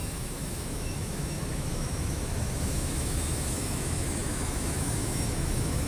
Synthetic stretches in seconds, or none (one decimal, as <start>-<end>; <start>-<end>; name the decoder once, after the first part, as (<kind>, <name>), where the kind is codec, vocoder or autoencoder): 0.0-5.9 (autoencoder, DAC-VAE)